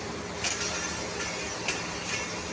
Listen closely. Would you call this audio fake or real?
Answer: real